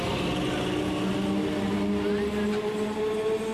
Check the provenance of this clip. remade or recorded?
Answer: recorded